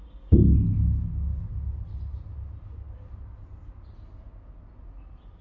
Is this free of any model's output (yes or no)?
yes